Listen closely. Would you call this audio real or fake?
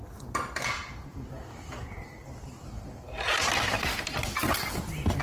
real